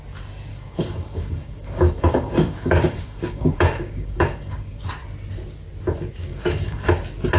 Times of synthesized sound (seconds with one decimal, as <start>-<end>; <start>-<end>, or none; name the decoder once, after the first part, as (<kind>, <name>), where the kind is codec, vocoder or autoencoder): 0.5-4.9 (codec, DAC); 6.2-6.9